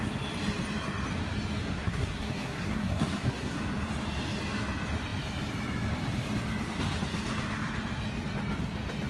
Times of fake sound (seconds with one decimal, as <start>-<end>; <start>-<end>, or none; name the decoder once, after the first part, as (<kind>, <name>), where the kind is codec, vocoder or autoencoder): 1.6-3.6 (codec, SNAC)

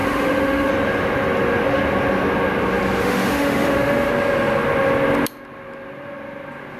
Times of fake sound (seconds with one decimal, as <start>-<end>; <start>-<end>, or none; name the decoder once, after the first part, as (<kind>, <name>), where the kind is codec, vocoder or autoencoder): 0.0-0.7 (autoencoder, DAC-VAE); 3.0-4.1

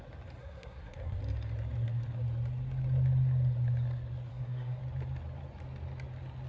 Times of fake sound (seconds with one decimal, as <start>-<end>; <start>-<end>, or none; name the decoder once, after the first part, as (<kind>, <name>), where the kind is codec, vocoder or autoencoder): 0.4-1.2 (codec, SNAC); 4.3-4.8

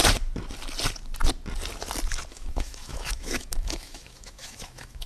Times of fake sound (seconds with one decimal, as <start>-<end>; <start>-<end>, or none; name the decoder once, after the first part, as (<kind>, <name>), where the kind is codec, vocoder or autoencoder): 2.3-5.1 (autoencoder, DAC-VAE)

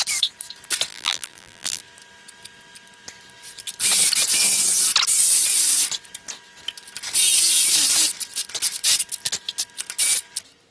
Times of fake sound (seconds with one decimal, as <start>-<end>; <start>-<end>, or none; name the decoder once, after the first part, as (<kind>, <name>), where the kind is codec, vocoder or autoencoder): 0.9-1.8 (vocoder, BigVGAN v2)

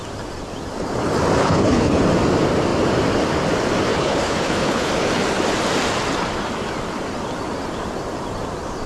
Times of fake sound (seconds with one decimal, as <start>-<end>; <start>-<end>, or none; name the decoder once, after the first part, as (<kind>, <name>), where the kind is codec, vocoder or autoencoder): 1.4-2.0 (codec, HILCodec); 3.9-4.9